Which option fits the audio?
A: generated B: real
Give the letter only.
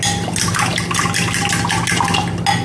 B